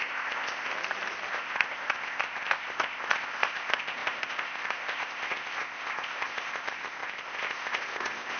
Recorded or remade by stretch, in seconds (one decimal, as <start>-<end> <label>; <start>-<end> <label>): 0.0-0.7 remade; 0.7-1.3 recorded; 1.3-8.4 remade